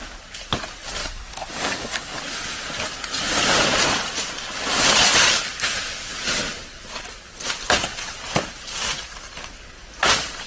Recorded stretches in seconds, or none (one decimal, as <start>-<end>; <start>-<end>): 0.0-1.0; 2.2-10.5